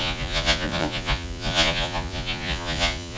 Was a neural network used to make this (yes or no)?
yes